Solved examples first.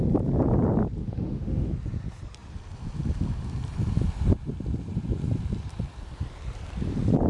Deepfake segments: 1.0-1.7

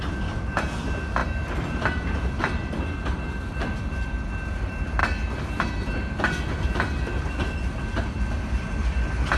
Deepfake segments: none

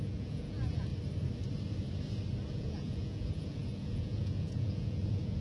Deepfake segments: 0.0-0.9; 2.5-5.4